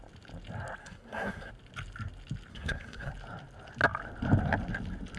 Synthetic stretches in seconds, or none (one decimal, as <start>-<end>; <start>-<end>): 0.8-1.5; 2.5-3.1